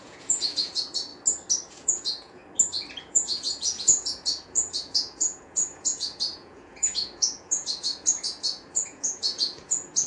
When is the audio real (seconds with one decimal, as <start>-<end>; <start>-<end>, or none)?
1.1-1.7; 2.4-3.0